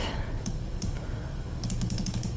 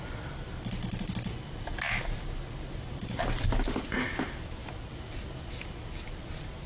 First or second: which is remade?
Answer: first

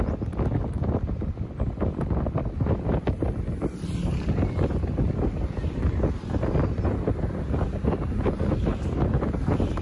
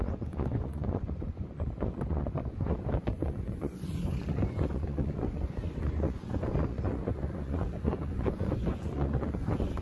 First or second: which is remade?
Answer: second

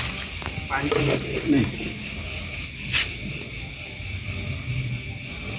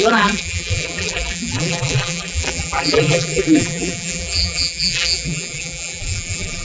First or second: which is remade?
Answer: second